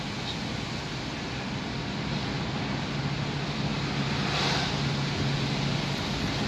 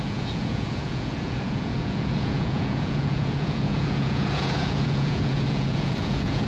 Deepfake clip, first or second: second